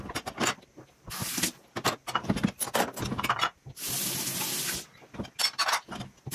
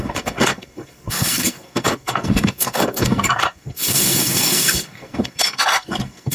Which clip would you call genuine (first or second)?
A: first